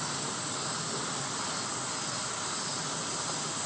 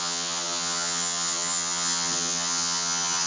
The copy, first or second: second